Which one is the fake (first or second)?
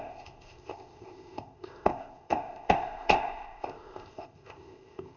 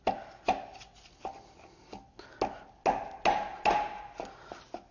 first